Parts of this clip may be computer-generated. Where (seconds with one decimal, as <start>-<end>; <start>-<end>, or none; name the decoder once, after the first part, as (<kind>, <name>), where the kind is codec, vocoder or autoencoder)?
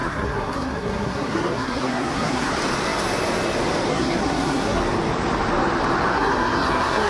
0.0-2.5 (codec, SNAC); 3.9-4.8; 6.1-7.1